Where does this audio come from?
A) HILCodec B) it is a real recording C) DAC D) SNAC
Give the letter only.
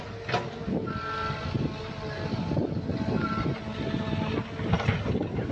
B